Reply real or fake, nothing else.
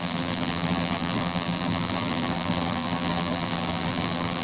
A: fake